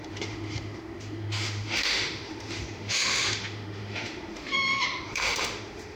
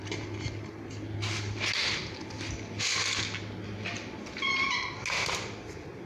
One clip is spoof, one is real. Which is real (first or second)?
second